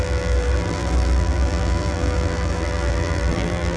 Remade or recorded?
remade